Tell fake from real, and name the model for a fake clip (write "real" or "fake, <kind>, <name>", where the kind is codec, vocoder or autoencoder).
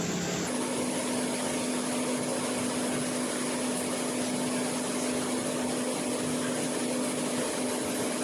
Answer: real